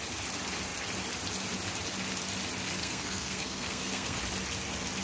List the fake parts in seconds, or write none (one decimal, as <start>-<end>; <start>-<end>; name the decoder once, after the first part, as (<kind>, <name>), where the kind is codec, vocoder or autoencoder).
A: 2.8-4.2 (codec, SNAC)